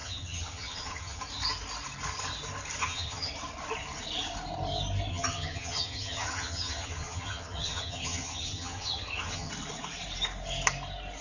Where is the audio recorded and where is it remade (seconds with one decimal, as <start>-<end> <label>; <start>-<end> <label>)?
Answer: 0.0-1.2 remade; 1.2-2.8 recorded; 2.8-3.3 remade; 3.3-5.1 recorded; 5.1-9.5 remade; 9.5-11.2 recorded